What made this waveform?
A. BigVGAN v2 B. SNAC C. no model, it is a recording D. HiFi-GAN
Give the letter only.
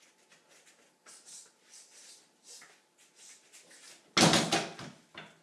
C